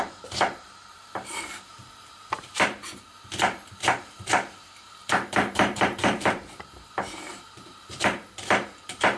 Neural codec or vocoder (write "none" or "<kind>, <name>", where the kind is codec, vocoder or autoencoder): vocoder, BigVGAN v2